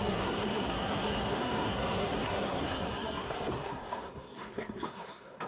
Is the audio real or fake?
fake